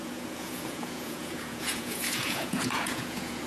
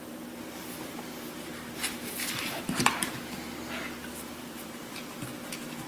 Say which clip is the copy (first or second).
first